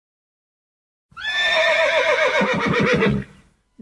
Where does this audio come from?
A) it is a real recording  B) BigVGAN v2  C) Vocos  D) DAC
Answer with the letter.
A